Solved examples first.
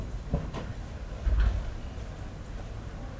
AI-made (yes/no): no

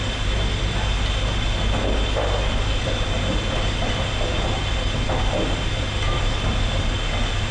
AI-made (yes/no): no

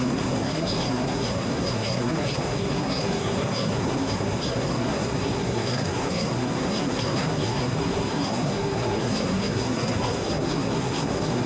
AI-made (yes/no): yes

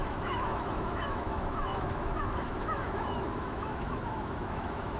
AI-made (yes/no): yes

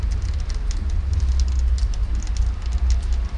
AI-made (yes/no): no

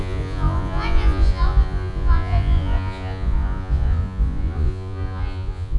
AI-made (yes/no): yes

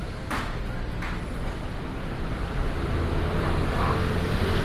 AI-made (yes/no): no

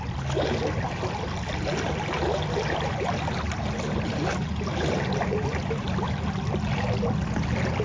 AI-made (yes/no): no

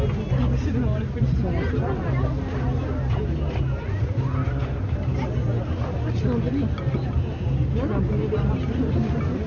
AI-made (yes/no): no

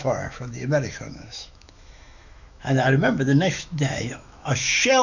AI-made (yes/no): yes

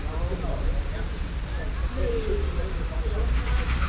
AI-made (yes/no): no